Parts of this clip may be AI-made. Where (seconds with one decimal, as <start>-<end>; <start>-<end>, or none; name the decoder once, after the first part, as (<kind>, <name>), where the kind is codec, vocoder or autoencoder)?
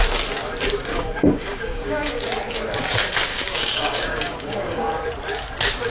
0.9-2.1 (codec, DAC); 3.3-5.0